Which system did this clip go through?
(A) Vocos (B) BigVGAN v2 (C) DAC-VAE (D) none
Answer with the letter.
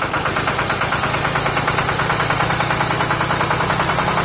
D